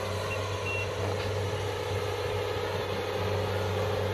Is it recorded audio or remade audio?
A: recorded